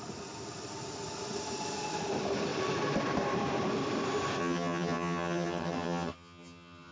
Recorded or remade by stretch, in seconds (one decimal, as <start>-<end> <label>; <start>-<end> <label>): 0.0-4.4 recorded; 4.4-6.9 remade